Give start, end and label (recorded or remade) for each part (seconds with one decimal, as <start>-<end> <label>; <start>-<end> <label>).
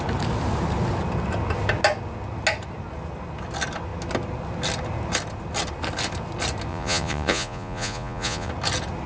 0.0-6.7 recorded; 6.7-8.5 remade; 8.5-9.1 recorded